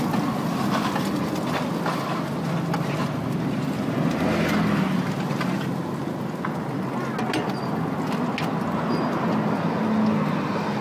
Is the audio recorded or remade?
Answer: recorded